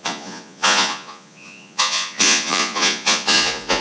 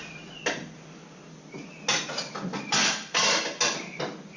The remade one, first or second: first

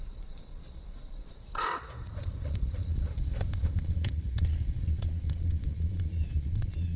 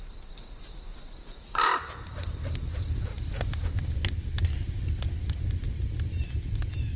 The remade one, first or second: first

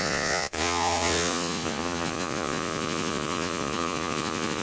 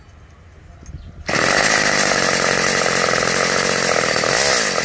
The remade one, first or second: first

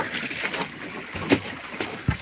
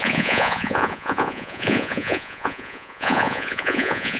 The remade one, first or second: second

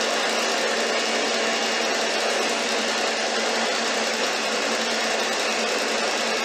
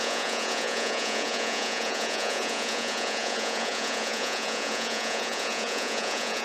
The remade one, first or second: second